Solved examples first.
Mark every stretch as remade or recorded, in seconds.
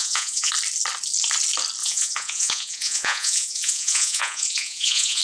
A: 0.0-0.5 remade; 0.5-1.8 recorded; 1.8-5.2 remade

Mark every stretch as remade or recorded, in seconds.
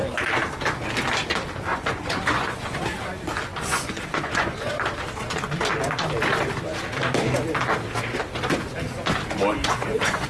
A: 0.0-1.7 recorded; 1.7-2.8 remade; 2.8-3.7 recorded; 3.7-4.7 remade; 4.7-9.6 recorded; 9.6-10.3 remade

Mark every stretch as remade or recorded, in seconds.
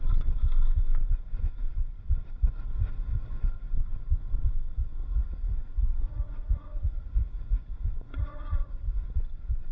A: 0.0-2.7 recorded; 2.7-3.4 remade; 3.4-5.0 recorded; 5.0-9.1 remade; 9.1-9.7 recorded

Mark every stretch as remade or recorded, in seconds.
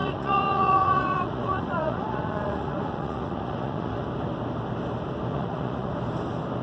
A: 0.0-4.0 remade; 4.0-5.3 recorded; 5.3-5.9 remade; 5.9-6.6 recorded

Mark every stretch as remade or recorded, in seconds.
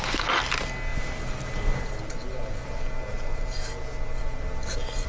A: 0.0-5.1 recorded